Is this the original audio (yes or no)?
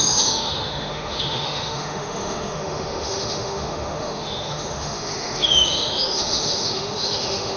no